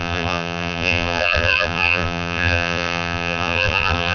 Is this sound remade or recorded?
remade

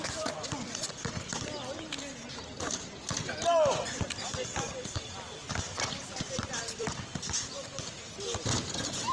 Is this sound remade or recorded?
remade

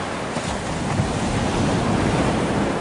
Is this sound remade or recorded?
recorded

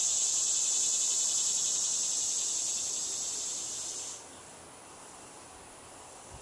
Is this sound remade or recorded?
recorded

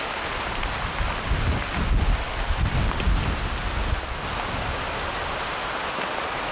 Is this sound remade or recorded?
recorded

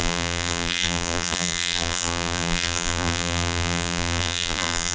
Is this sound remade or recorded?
remade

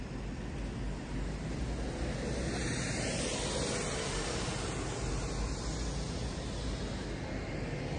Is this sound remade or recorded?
recorded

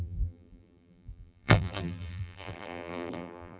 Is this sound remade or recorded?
remade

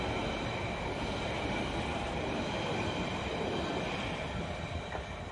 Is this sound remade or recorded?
recorded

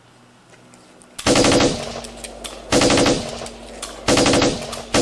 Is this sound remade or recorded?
recorded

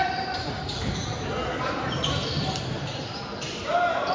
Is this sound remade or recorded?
remade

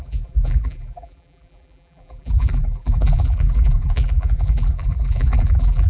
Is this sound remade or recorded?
remade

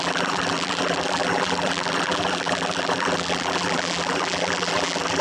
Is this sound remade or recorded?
remade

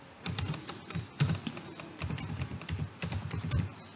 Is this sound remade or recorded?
remade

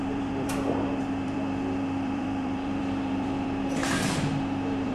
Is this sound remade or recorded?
remade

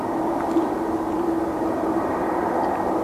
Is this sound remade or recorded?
recorded